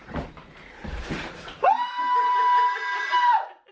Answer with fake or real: fake